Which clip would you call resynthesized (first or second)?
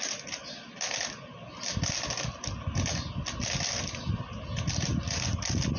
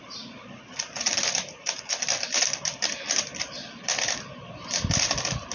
second